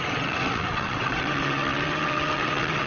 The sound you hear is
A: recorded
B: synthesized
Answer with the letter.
B